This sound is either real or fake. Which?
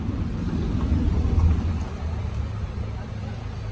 real